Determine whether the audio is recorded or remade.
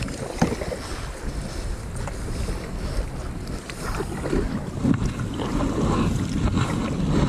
recorded